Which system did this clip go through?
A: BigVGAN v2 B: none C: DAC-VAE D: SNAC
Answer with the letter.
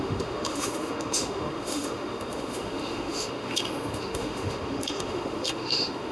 C